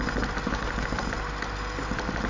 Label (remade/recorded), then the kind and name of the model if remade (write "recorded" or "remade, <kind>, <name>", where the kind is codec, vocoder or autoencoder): recorded